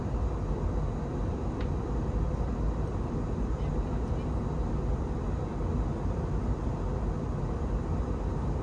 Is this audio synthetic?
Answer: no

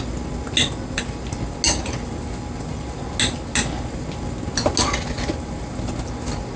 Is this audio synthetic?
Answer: no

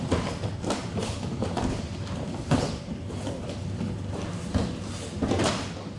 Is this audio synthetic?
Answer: no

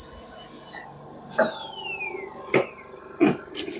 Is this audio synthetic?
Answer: no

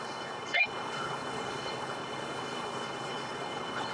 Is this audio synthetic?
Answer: yes